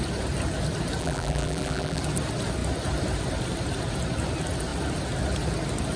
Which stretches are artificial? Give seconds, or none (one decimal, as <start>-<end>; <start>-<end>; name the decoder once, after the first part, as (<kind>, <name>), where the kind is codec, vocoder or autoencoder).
1.0-2.0 (vocoder, BigVGAN v2)